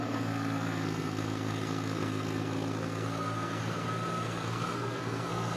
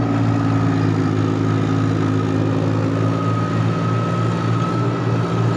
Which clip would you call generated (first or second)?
first